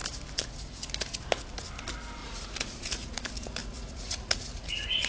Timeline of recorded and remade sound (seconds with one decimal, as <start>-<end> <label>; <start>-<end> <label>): 0.0-2.2 recorded; 2.2-3.2 remade; 3.2-3.6 recorded; 3.6-5.1 remade